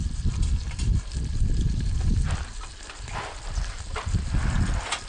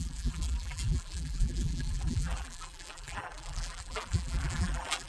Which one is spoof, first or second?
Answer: second